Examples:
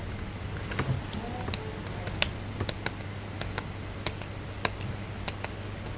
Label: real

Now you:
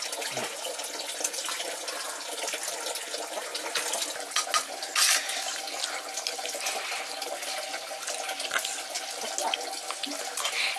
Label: real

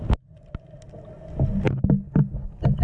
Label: real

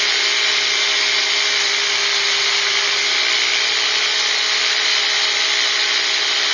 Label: real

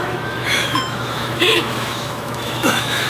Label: fake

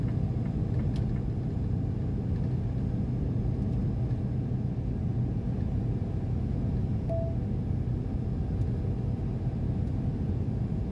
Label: real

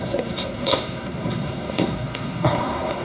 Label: fake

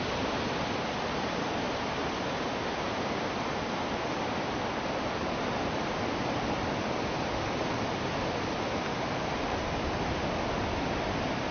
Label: real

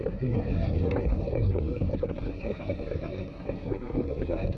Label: fake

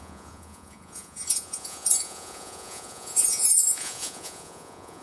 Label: fake